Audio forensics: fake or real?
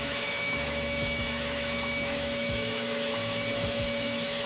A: fake